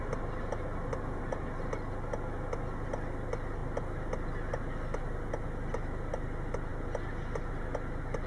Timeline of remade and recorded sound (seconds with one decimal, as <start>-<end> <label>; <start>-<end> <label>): 0.0-8.3 recorded

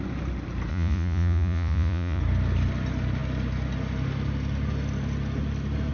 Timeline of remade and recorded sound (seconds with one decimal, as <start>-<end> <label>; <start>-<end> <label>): 0.0-0.7 recorded; 0.7-2.2 remade; 2.2-5.9 recorded

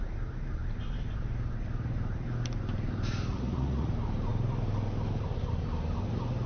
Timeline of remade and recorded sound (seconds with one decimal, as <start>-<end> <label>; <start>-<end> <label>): 0.0-3.3 recorded; 3.3-3.9 remade; 3.9-6.5 recorded

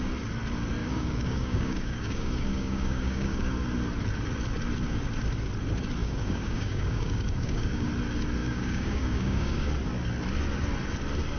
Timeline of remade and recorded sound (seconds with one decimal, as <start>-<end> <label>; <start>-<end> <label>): 0.0-0.8 recorded; 0.8-3.5 remade; 3.5-6.0 recorded; 6.0-7.9 remade; 7.9-8.4 recorded; 8.4-9.7 remade; 9.7-11.4 recorded

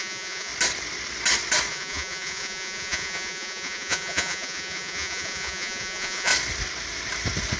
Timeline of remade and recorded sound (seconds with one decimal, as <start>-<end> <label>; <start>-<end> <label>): 0.0-0.5 remade; 0.5-1.7 recorded; 1.7-6.3 remade; 6.3-7.6 recorded